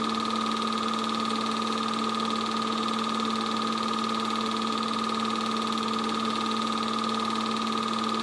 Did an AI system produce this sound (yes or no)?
no